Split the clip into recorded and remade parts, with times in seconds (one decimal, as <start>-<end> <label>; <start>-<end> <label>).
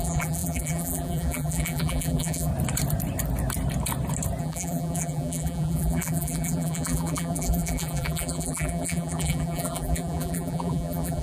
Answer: 0.0-2.5 remade; 2.5-4.4 recorded; 4.4-11.2 remade